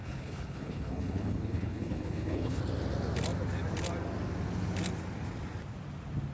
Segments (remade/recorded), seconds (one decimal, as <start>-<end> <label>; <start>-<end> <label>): 0.0-2.6 remade; 2.6-6.3 recorded